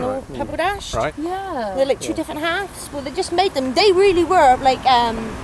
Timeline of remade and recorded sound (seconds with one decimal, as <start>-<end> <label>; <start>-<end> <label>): 0.0-5.4 recorded